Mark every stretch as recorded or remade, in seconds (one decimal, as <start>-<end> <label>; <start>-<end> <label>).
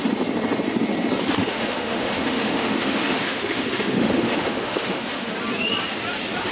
0.0-1.4 recorded; 1.4-5.3 remade; 5.3-6.5 recorded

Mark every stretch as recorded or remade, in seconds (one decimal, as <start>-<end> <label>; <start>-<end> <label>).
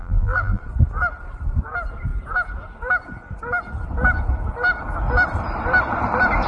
0.0-0.6 remade; 0.6-6.5 recorded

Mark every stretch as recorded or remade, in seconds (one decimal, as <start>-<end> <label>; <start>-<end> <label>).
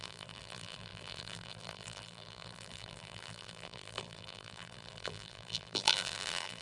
0.0-6.6 remade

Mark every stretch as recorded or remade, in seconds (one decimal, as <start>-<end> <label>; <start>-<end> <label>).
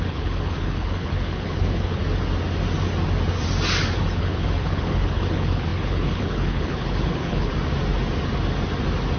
0.0-2.0 remade; 2.0-4.0 recorded; 4.0-7.5 remade; 7.5-9.2 recorded